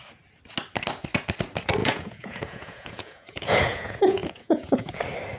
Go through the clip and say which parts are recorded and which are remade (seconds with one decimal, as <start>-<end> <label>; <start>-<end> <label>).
0.0-1.8 recorded; 1.8-5.0 remade; 5.0-5.4 recorded